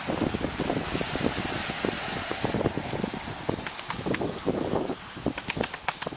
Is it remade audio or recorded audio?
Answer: recorded